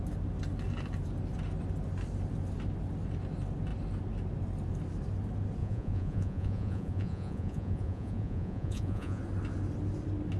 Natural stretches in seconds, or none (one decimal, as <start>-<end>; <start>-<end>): 0.0-5.6; 9.2-10.4